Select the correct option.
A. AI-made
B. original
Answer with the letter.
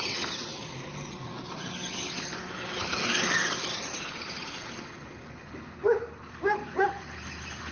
B